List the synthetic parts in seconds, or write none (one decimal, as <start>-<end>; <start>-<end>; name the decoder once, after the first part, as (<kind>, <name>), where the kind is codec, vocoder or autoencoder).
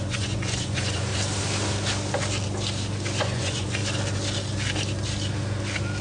0.0-1.1 (vocoder, Vocos); 3.2-3.8